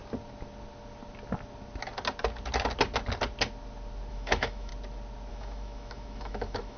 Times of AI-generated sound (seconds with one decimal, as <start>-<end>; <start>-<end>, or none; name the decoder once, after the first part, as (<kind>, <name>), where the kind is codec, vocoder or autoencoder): 4.1-4.7 (autoencoder, DAC-VAE); 5.3-6.8

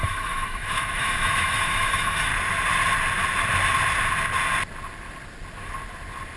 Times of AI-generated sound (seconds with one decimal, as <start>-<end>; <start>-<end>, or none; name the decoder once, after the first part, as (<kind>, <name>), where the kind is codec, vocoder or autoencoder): 0.0-2.3 (autoencoder, DAC-VAE)

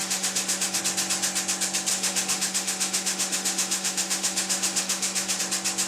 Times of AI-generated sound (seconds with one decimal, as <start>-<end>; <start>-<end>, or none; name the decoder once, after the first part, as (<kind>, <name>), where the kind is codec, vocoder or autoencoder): 0.0-0.8 (autoencoder, DAC-VAE); 1.9-5.4

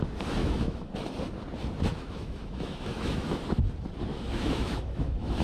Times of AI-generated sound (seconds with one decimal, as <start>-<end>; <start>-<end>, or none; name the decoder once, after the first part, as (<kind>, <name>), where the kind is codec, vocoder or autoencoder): 0.4-0.9 (autoencoder, DAC-VAE); 1.9-3.4; 4.1-5.4